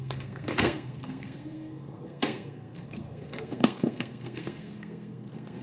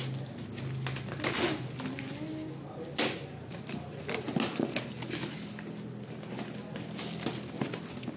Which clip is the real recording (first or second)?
second